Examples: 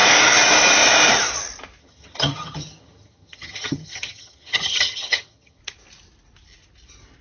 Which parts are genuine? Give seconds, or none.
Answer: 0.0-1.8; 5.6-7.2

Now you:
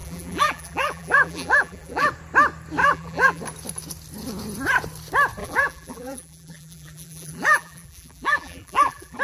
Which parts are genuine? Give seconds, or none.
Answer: 2.1-2.8; 3.4-5.4

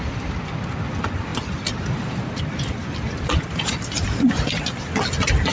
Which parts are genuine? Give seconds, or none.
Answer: 0.0-5.5

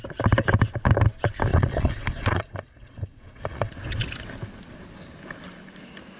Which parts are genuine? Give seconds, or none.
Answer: 0.0-1.5; 3.7-6.2

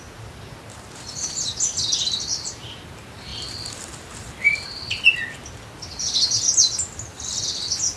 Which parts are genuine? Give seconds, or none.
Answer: 0.0-8.0

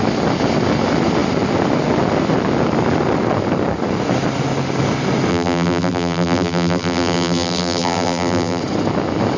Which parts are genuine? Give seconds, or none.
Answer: 0.0-5.3; 8.6-9.4

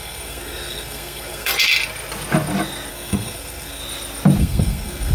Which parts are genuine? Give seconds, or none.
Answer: 1.5-2.9; 3.8-4.4

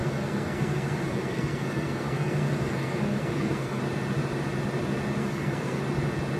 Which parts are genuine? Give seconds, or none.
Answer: 3.8-5.2; 5.8-6.4